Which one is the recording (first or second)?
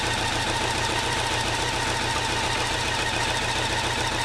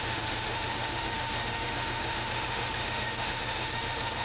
first